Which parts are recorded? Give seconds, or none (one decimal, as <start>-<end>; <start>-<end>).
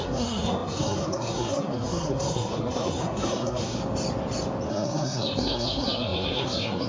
3.8-4.7